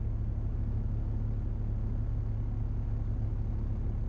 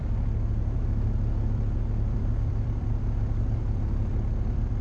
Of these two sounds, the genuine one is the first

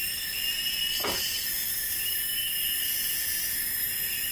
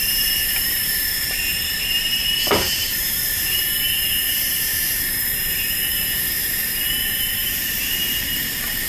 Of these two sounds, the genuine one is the first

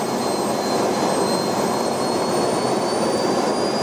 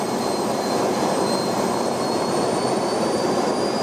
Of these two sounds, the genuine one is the first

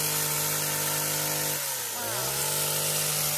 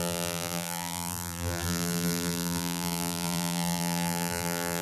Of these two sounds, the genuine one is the first